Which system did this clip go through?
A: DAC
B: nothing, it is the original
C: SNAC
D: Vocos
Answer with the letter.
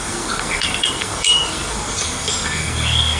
C